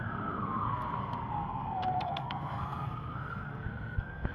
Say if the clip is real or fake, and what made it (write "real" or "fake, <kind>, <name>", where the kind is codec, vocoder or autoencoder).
fake, codec, SNAC